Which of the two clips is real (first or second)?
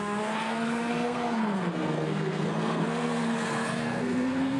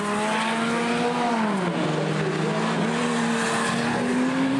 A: second